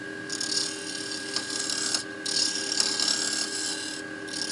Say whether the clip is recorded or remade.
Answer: recorded